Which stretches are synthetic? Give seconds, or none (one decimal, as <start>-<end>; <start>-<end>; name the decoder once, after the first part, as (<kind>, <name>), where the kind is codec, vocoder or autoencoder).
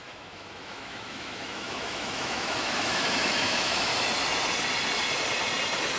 0.0-3.9 (autoencoder, DAC-VAE)